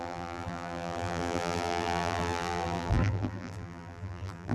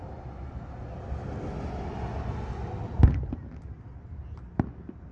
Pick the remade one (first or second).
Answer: first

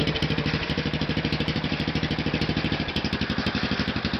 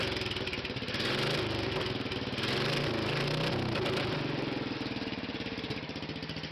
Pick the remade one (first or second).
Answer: first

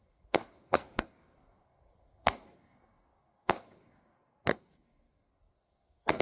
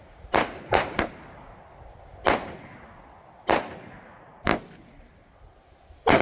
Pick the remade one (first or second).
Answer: first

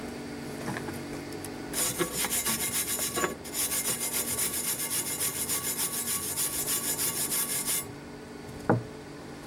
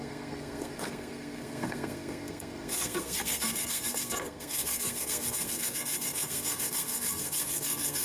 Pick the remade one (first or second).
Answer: second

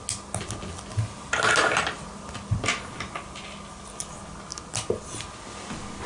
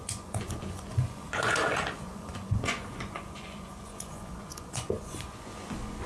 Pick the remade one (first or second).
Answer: second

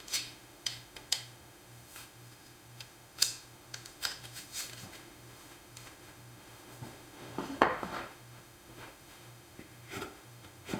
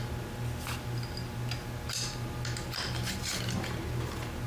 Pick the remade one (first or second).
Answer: first